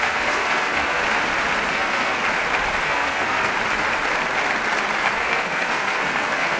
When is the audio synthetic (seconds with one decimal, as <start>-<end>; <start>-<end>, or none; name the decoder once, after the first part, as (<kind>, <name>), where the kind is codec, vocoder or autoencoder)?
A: 0.0-1.0 (codec, SNAC); 1.7-2.2; 2.8-3.5; 5.0-6.6